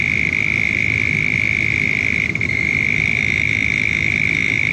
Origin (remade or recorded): recorded